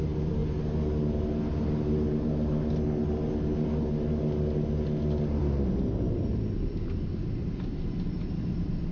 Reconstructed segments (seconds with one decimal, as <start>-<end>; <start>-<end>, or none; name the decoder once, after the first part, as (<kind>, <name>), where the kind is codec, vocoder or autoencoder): none